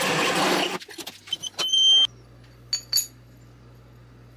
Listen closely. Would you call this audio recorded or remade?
recorded